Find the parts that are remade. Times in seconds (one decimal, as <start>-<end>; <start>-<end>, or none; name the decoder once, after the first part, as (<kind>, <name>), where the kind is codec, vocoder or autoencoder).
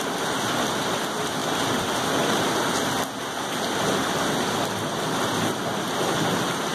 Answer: none